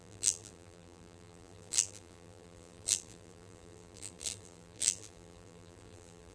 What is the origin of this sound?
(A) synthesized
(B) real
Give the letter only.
A